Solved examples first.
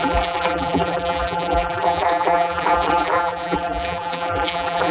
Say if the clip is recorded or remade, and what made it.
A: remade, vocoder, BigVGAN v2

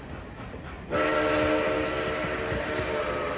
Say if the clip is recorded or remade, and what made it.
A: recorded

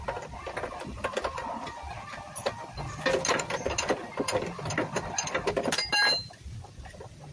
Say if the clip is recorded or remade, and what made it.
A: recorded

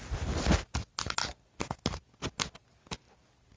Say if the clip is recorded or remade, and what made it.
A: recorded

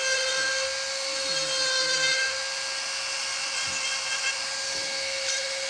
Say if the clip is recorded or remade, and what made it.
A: recorded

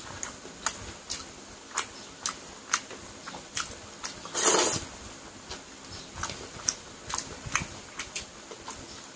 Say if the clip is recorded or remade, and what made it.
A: recorded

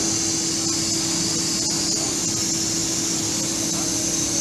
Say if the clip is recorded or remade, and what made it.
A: recorded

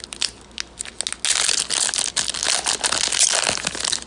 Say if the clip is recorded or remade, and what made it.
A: recorded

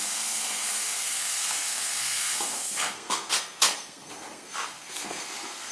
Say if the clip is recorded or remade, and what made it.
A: remade, codec, SNAC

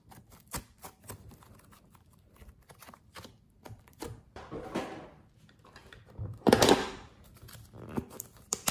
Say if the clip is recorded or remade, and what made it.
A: remade, vocoder, BigVGAN v2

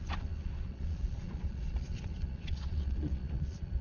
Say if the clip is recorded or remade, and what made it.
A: remade, vocoder, Vocos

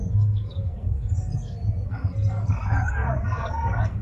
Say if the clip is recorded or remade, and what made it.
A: remade, codec, SNAC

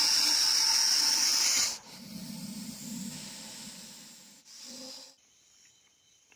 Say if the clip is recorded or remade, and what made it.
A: recorded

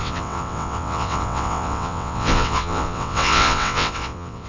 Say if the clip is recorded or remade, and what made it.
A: remade, vocoder, WaveNeXt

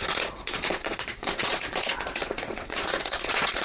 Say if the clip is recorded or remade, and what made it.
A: remade, vocoder, Vocos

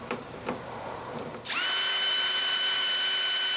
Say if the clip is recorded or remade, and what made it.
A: remade, vocoder, BigVGAN v2